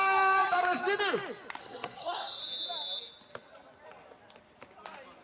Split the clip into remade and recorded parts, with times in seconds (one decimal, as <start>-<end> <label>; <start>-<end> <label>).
0.0-1.6 recorded; 1.6-2.4 remade; 2.4-5.2 recorded